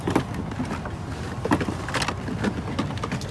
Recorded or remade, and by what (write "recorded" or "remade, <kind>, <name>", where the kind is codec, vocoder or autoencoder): recorded